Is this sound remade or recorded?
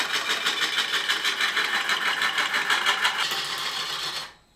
recorded